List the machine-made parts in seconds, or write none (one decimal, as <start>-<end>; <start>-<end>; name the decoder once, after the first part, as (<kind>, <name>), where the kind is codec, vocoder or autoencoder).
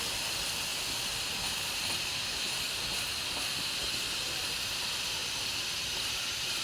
0.0-6.6 (vocoder, BigVGAN v2)